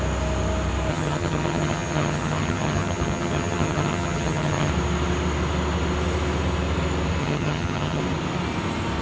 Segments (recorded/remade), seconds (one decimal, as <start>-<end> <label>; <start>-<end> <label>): 0.0-0.9 recorded; 0.9-4.7 remade; 4.7-7.2 recorded; 7.2-8.0 remade; 8.0-9.0 recorded